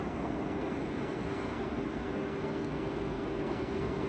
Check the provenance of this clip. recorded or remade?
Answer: remade